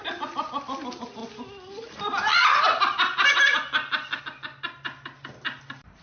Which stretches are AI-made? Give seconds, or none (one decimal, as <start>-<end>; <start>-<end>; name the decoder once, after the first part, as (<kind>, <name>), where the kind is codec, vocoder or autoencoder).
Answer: none